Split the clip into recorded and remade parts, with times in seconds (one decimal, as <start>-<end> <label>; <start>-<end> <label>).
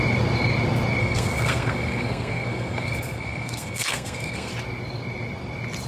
0.0-1.0 recorded; 1.0-4.5 remade; 4.5-5.9 recorded